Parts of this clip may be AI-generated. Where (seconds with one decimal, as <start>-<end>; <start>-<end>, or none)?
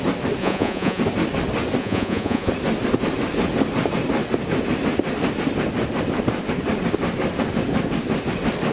0.4-1.0; 1.8-2.5